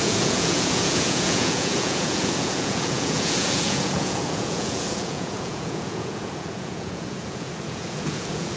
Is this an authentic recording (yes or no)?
no